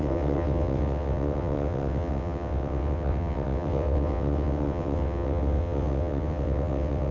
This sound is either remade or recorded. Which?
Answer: remade